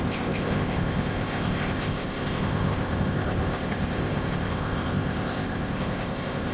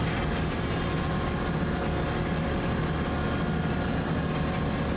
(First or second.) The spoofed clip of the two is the first